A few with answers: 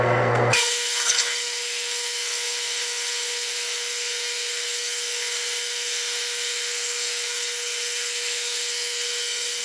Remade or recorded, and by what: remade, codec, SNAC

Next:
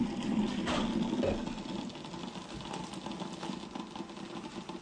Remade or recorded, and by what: recorded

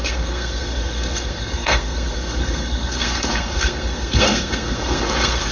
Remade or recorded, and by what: remade, codec, SNAC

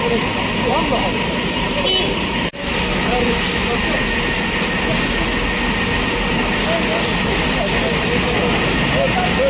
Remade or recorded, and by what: recorded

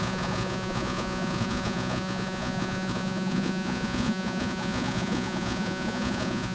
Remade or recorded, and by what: remade, vocoder, Vocos